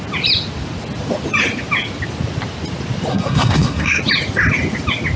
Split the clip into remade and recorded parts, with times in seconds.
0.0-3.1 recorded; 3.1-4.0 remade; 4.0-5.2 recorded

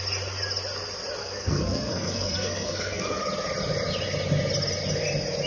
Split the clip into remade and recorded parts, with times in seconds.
0.0-1.2 recorded; 1.2-3.2 remade; 3.2-5.5 recorded

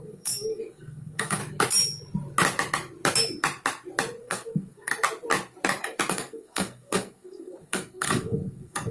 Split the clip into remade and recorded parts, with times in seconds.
0.0-1.4 remade; 1.4-4.2 recorded; 4.2-4.9 remade; 4.9-6.1 recorded; 6.1-8.9 remade